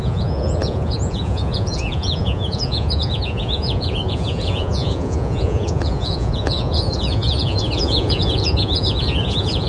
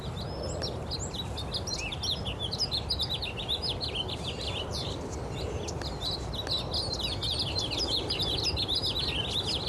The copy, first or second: first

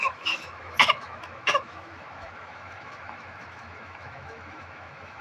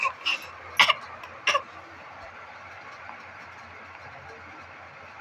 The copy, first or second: first